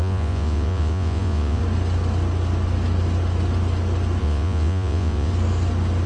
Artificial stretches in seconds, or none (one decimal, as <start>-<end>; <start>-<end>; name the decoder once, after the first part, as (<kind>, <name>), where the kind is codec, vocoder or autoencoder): 0.0-1.6 (vocoder, Vocos); 4.2-5.3